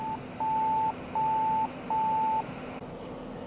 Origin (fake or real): real